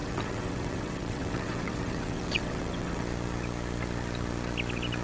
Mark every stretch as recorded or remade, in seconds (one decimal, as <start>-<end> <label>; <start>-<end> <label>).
0.0-3.0 remade; 3.0-5.0 recorded